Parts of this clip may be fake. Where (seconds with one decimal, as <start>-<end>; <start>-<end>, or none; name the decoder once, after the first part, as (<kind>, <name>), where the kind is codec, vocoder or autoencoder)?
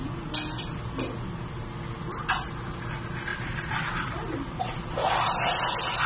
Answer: 3.3-4.6 (vocoder, BigVGAN v2)